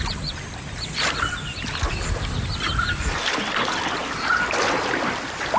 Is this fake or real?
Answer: real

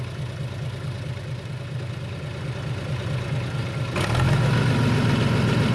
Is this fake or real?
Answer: real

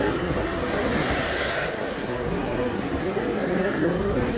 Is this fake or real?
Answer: fake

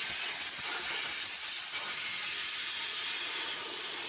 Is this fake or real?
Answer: real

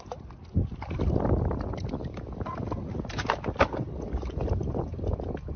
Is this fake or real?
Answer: real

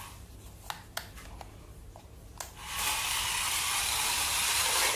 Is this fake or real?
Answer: real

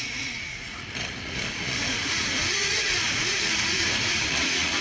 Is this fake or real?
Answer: fake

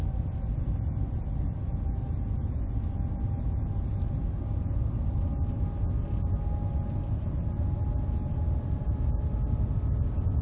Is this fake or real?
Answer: real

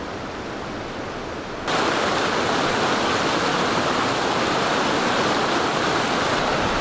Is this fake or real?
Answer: real